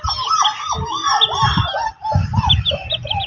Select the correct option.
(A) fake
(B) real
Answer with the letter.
B